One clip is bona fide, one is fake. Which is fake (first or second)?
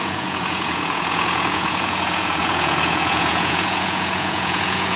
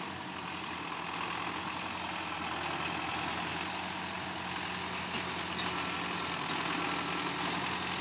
first